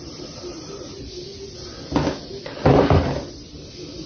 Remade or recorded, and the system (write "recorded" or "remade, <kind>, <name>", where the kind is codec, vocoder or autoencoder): recorded